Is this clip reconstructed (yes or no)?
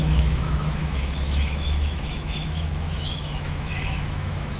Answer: yes